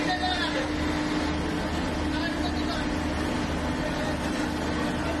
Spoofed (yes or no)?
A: no